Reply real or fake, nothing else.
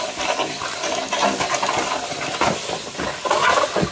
real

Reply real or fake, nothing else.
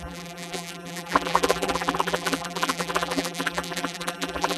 fake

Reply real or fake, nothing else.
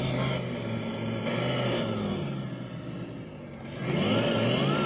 real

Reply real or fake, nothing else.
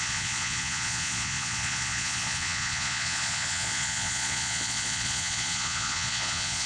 fake